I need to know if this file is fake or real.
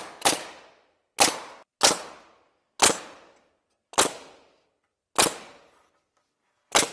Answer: real